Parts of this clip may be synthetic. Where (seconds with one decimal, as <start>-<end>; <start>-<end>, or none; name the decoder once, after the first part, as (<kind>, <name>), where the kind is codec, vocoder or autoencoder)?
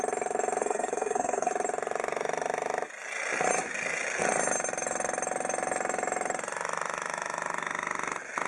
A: 0.6-1.5 (codec, SNAC)